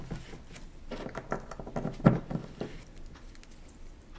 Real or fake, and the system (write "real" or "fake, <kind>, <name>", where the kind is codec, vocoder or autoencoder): real